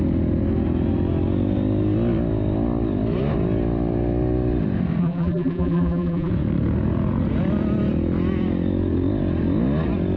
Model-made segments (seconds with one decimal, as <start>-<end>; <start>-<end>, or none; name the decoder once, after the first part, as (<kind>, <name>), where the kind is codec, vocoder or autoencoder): 5.0-6.3 (vocoder, BigVGAN v2)